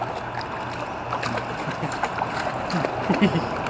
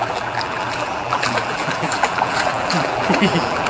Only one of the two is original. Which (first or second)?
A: first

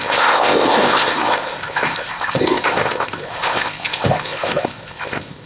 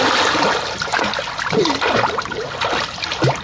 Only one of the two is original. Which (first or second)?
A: second